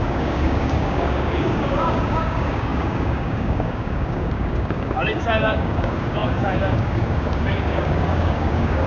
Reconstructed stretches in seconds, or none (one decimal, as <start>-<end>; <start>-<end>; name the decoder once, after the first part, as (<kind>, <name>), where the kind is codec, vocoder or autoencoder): 0.0-8.9 (codec, DAC)